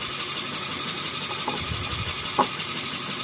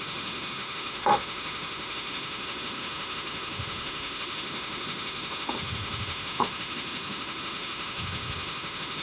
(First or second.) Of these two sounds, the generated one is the second